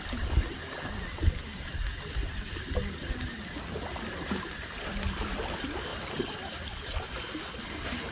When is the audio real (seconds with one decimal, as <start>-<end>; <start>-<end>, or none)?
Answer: 0.0-8.1